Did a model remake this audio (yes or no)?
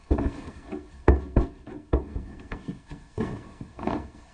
yes